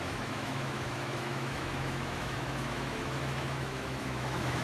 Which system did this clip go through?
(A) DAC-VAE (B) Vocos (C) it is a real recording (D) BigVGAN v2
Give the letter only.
A